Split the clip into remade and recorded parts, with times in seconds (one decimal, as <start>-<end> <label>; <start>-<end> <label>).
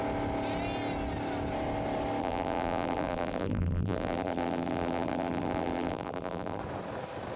0.0-2.2 recorded; 2.2-6.6 remade; 6.6-7.4 recorded